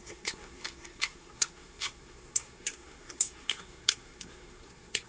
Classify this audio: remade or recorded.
remade